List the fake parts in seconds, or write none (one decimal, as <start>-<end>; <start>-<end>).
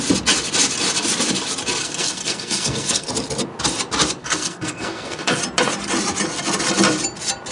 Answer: 1.8-3.1; 4.2-5.4